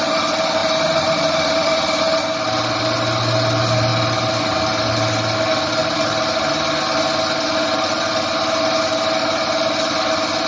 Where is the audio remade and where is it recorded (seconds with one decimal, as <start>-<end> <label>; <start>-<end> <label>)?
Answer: 0.0-0.6 recorded; 0.6-2.0 remade; 2.0-5.8 recorded; 5.8-6.5 remade; 6.5-10.5 recorded